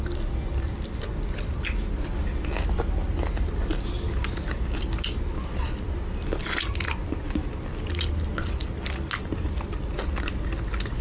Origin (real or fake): real